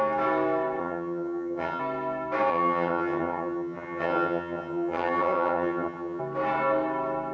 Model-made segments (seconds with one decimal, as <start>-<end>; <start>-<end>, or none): 0.8-1.8; 2.5-6.2